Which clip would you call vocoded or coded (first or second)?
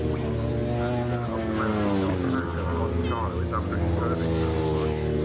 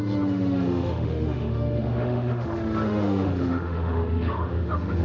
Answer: second